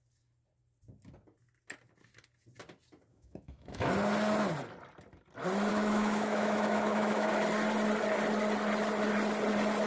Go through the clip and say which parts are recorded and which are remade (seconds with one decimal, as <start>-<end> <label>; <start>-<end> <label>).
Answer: 0.0-3.1 recorded; 3.1-3.9 remade; 3.9-5.7 recorded; 5.7-7.3 remade; 7.3-9.9 recorded